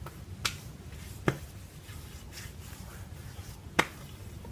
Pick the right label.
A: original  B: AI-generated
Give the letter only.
A